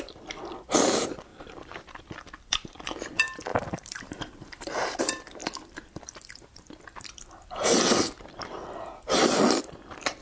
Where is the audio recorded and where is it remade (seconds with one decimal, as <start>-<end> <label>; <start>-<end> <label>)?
0.0-1.3 recorded; 1.3-2.0 remade; 2.0-3.5 recorded; 3.5-5.0 remade; 5.0-10.2 recorded